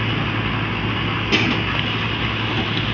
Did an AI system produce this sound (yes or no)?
no